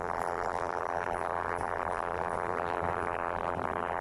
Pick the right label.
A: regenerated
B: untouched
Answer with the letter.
A